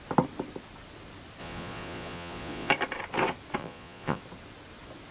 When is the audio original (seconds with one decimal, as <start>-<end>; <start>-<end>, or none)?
0.0-1.4; 2.7-3.6; 4.2-5.1